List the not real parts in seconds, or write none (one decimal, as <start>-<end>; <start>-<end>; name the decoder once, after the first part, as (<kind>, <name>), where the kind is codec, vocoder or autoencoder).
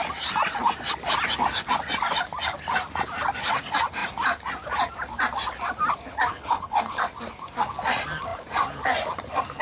6.3-7.0 (codec, HILCodec)